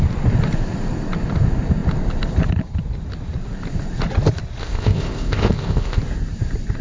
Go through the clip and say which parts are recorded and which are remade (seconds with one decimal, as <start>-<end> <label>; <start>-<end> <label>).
0.0-4.6 recorded; 4.6-6.0 remade; 6.0-6.8 recorded